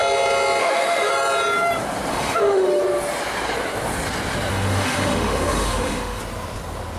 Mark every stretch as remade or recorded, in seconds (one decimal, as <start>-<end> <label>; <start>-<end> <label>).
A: 0.0-0.6 recorded; 0.6-1.1 remade; 1.1-2.1 recorded; 2.1-2.8 remade; 2.8-4.5 recorded; 4.5-6.2 remade; 6.2-7.0 recorded